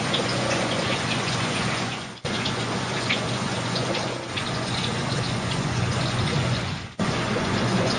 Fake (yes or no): yes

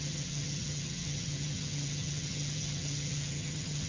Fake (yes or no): yes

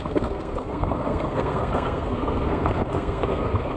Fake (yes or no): yes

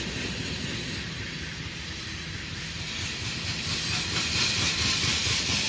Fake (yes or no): no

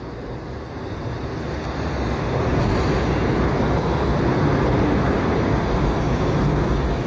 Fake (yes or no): no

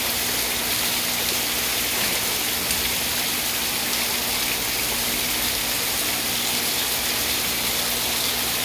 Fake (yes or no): no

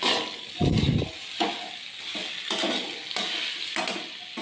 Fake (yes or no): no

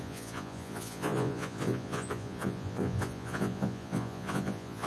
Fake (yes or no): yes